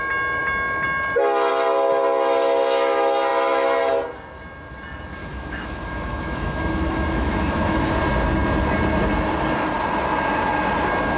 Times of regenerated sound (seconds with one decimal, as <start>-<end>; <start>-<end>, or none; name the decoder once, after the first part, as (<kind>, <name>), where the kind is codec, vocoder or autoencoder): 5.2-7.9 (autoencoder, DAC-VAE)